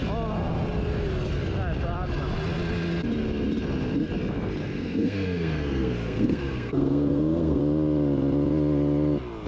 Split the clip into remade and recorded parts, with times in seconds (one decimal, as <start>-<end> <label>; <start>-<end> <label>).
0.0-4.6 recorded; 4.6-7.6 remade; 7.6-9.5 recorded